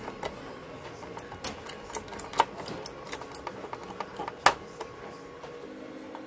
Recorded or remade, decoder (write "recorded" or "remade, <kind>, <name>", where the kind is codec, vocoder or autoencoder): recorded